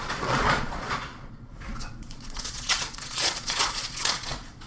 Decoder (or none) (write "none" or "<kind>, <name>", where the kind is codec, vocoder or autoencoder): vocoder, Vocos